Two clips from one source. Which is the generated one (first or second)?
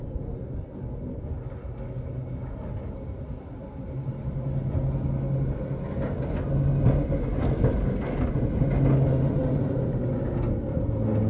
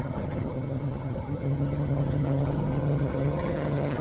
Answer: second